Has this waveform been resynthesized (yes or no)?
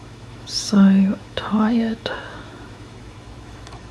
yes